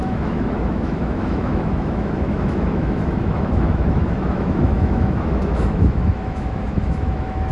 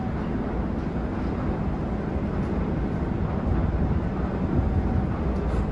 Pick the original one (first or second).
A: second